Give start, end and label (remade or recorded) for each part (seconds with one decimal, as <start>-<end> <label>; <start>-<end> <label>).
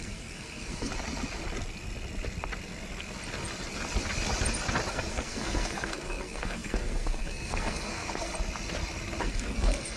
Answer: 0.0-0.9 remade; 0.9-4.9 recorded; 4.9-8.3 remade; 8.3-9.2 recorded; 9.2-10.0 remade